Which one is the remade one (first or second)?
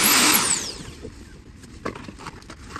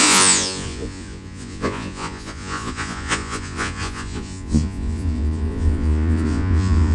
second